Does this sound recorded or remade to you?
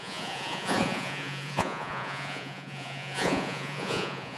remade